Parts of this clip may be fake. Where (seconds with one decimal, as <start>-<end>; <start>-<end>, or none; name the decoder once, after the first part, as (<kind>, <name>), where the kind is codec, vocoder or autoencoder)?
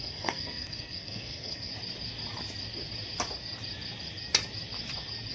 0.0-1.7 (codec, SNAC)